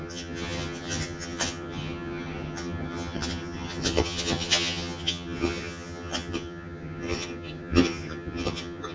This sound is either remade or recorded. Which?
remade